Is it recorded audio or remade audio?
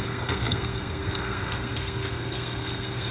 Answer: remade